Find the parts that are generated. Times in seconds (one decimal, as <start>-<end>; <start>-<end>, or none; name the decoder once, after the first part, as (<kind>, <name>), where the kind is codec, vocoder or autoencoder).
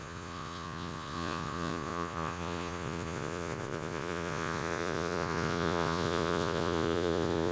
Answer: 0.0-7.5 (vocoder, Vocos)